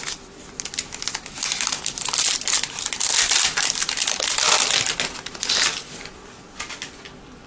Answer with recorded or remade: recorded